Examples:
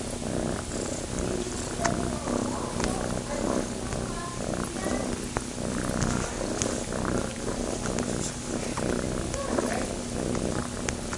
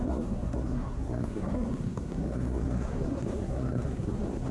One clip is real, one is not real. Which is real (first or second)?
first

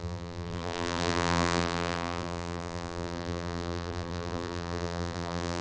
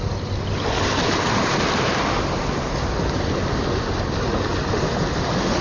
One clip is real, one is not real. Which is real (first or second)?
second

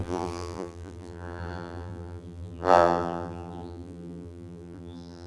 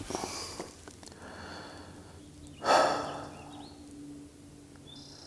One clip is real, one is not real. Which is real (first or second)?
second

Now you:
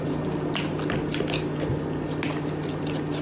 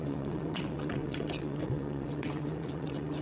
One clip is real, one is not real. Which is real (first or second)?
first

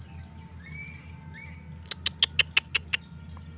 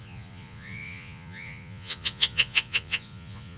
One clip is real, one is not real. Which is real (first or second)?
first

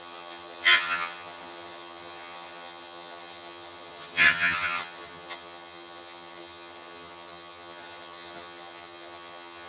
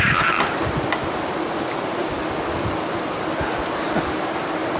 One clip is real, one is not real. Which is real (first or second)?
second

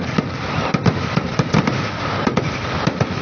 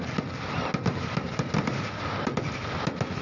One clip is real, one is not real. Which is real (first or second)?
second